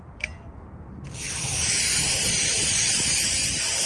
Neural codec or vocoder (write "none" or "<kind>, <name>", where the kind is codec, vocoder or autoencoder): none